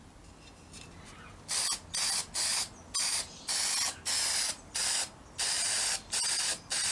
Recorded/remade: recorded